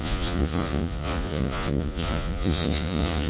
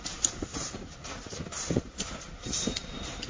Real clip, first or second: second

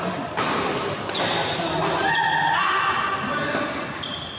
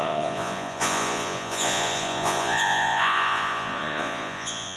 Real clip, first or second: first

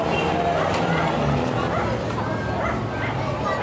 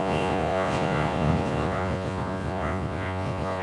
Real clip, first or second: first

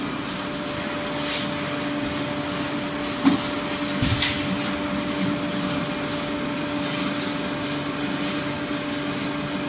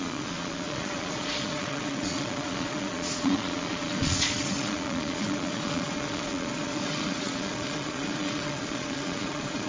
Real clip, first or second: first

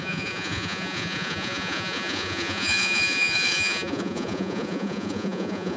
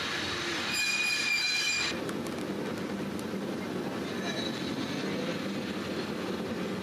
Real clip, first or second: second